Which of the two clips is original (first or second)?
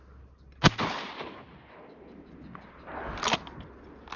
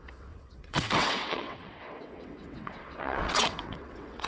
first